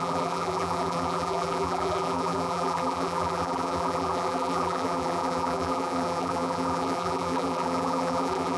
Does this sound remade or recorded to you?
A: remade